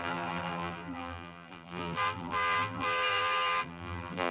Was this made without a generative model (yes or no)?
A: no